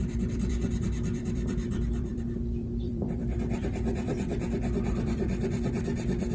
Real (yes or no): no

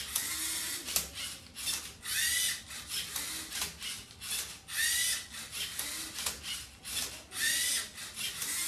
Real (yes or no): yes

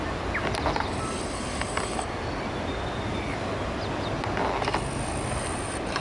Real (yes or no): yes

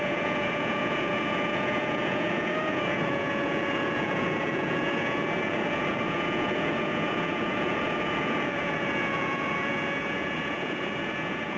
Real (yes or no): no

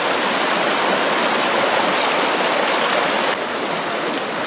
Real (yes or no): yes